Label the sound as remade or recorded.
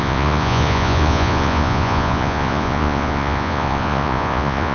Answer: remade